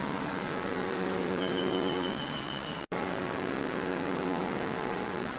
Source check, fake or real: fake